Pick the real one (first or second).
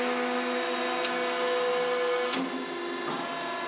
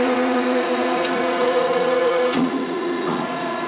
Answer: first